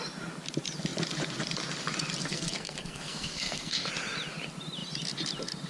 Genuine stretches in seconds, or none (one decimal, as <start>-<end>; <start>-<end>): 0.0-2.2; 3.9-5.7